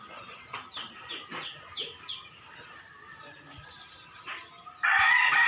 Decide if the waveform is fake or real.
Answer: real